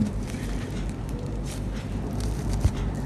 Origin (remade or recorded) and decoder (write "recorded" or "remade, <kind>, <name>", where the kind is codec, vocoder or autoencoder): remade, vocoder, BigVGAN v2